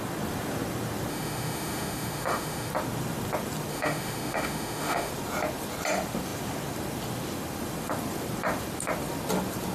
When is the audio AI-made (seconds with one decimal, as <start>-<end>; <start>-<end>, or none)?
1.1-2.7; 3.7-5.1